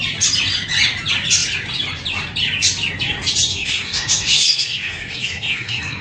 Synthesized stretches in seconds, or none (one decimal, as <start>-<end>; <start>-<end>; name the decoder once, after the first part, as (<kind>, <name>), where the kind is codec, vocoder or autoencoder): 3.5-6.0 (codec, SNAC)